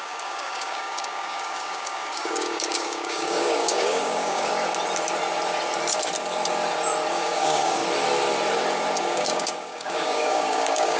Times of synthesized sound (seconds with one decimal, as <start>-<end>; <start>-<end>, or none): 0.0-4.5; 7.1-7.8; 9.0-11.0